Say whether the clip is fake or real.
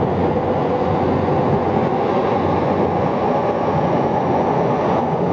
fake